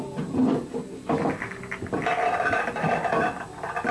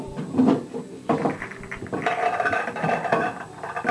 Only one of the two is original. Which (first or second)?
first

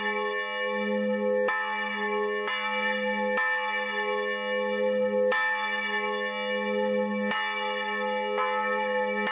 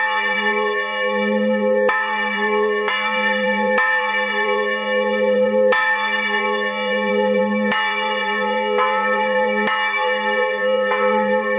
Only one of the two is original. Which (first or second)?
first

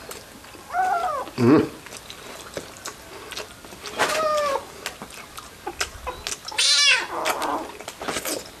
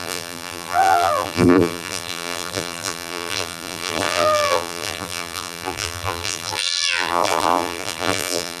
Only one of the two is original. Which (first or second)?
first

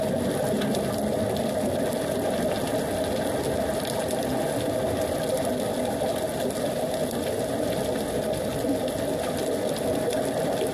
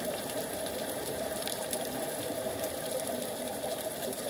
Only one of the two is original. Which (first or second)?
first